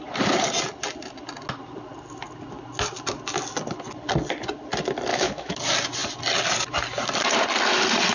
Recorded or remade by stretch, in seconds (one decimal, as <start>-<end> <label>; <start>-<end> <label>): 0.0-5.1 recorded; 5.1-5.6 remade; 5.6-8.1 recorded

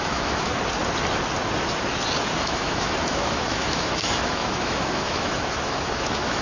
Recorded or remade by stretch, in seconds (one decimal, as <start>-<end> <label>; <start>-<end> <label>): 0.0-0.5 remade; 0.5-2.4 recorded; 2.4-6.4 remade

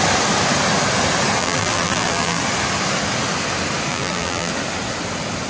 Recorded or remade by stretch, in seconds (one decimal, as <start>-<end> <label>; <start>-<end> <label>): 0.0-1.4 recorded; 1.4-2.4 remade; 2.4-3.9 recorded; 3.9-4.5 remade; 4.5-5.5 recorded

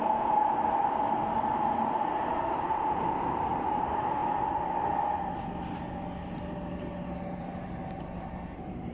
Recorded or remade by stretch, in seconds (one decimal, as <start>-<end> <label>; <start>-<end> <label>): 0.0-4.2 remade; 4.2-7.4 recorded; 7.4-8.9 remade

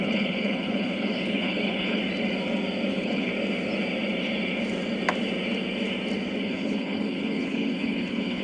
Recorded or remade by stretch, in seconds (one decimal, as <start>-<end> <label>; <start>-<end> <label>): 0.0-2.0 remade; 2.0-2.9 recorded; 2.9-3.3 remade; 3.3-6.4 recorded; 6.4-8.4 remade

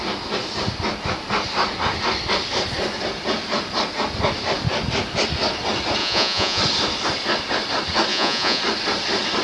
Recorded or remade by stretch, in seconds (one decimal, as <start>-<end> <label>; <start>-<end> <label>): 0.0-6.0 recorded; 6.0-6.6 remade; 6.6-8.1 recorded; 8.1-8.6 remade; 8.6-9.4 recorded